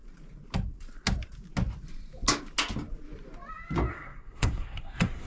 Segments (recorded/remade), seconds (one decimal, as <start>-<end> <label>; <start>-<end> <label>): 0.0-3.9 recorded; 3.9-5.3 remade